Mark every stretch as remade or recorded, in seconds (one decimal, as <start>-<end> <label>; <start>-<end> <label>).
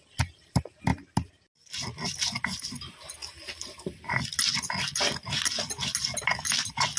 0.0-7.0 recorded